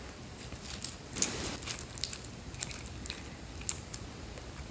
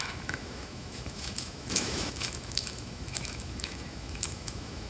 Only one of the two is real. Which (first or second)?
first